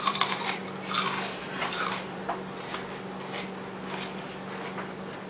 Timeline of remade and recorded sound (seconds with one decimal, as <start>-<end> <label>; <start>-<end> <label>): 0.0-0.6 remade; 0.6-1.4 recorded; 1.4-2.2 remade; 2.2-5.3 recorded